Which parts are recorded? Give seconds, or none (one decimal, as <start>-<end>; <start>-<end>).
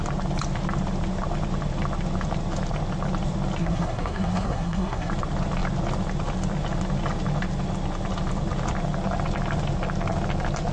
0.0-3.6; 5.1-10.7